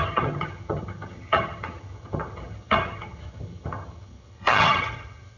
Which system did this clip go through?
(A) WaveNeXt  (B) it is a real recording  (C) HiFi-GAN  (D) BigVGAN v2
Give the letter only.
C